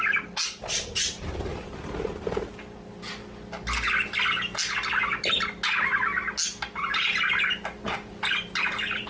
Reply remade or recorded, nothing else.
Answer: recorded